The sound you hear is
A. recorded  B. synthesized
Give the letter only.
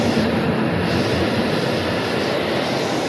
A